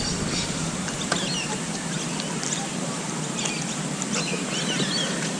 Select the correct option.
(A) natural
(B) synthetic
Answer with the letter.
A